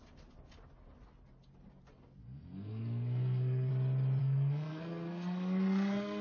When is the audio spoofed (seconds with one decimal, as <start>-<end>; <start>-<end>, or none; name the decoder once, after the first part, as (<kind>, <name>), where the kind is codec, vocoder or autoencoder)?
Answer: 2.2-3.7 (codec, SNAC); 4.2-6.2

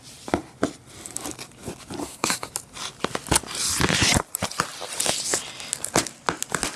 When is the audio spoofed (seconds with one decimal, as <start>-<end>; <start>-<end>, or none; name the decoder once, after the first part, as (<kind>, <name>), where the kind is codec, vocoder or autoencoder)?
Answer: 2.0-2.5 (codec, SNAC)

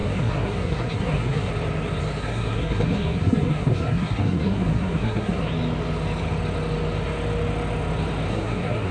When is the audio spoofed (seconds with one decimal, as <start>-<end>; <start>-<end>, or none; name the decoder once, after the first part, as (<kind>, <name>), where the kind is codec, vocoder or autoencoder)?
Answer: 0.0-1.5 (codec, SNAC); 2.2-5.5; 8.3-8.9